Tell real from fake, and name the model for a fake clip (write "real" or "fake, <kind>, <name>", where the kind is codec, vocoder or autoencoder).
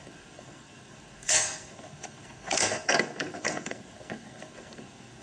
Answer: fake, codec, SNAC